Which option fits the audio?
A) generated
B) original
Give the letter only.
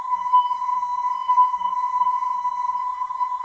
A